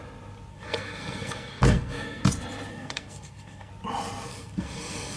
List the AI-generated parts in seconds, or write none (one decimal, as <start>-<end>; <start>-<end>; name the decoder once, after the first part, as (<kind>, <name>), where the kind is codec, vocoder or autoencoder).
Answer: 0.5-2.2 (codec, SNAC); 2.7-3.7; 4.3-5.2